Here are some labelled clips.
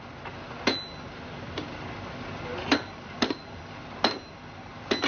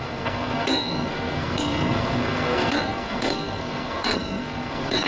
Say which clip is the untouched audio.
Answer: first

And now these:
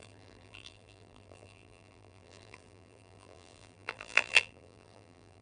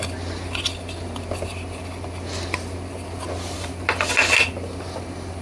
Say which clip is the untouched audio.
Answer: second